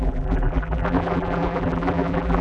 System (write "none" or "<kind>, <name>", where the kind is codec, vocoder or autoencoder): vocoder, BigVGAN v2